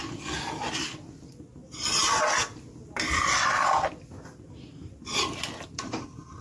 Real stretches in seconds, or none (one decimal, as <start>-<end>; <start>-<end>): 0.0-6.4